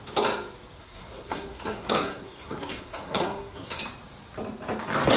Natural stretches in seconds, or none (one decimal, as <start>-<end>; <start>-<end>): 0.0-0.8; 3.8-5.2